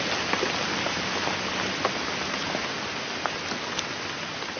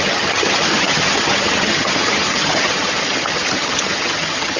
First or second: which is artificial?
second